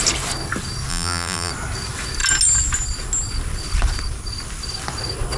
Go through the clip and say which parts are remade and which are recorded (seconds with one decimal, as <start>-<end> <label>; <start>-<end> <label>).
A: 0.0-0.9 recorded; 0.9-1.5 remade; 1.5-5.4 recorded